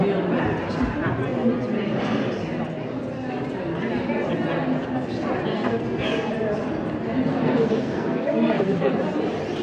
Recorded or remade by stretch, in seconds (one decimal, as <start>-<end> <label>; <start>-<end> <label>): 0.0-5.5 recorded; 5.5-6.3 remade; 6.3-7.3 recorded; 7.3-8.9 remade; 8.9-9.6 recorded